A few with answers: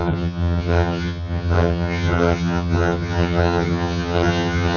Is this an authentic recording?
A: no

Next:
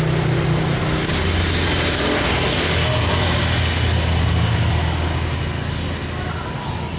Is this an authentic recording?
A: yes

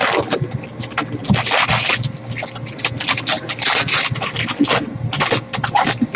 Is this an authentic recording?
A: yes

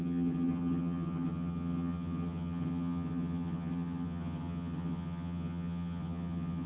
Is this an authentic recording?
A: no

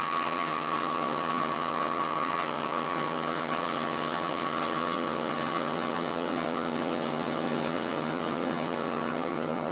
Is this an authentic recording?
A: no